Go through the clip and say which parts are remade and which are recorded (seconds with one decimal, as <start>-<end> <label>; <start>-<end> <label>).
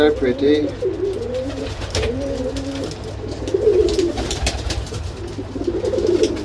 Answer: 0.0-3.7 recorded; 3.7-5.0 remade; 5.0-6.4 recorded